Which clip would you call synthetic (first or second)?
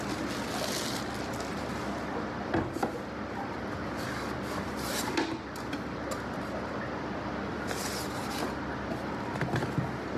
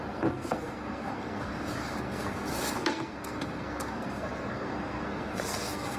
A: second